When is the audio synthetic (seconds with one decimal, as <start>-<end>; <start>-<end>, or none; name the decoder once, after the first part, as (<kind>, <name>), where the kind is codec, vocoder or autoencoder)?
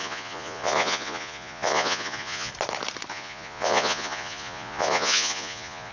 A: 0.0-2.5 (vocoder, Vocos); 3.1-5.9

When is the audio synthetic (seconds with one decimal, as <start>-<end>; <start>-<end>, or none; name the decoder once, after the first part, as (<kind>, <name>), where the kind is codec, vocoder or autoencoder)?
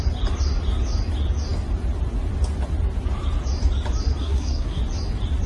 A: 4.2-4.8 (codec, SNAC)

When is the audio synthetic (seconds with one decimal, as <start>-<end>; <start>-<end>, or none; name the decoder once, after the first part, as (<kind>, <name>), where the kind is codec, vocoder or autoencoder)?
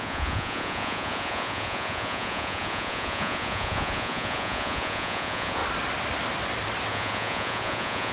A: 0.0-5.6 (vocoder, Vocos); 6.9-8.1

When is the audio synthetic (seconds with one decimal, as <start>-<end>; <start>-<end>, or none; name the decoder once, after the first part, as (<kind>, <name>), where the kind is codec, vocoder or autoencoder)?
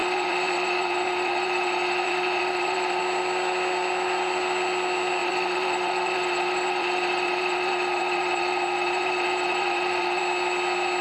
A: 0.0-3.0 (vocoder, BigVGAN v2); 5.2-10.2